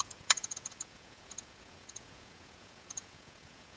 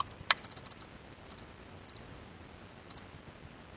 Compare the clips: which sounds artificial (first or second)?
first